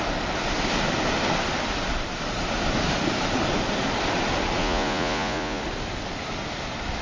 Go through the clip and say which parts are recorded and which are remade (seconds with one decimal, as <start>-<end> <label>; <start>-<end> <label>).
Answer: 0.0-4.6 recorded; 4.6-5.6 remade; 5.6-7.0 recorded